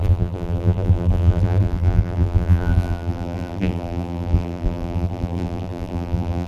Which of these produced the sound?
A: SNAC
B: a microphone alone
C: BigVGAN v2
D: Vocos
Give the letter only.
C